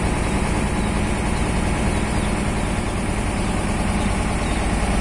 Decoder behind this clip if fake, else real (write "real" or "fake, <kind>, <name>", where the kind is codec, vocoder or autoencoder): real